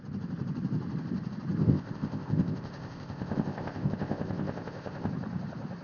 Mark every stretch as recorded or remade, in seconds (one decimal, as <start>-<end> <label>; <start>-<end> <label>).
0.0-1.6 recorded; 1.6-5.1 remade; 5.1-5.8 recorded